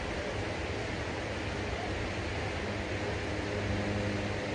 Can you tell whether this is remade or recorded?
recorded